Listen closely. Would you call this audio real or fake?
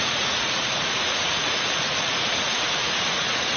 fake